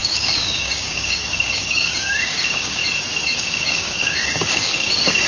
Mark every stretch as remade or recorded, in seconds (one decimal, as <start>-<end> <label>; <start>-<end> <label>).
0.0-2.8 remade; 2.8-3.4 recorded; 3.4-5.3 remade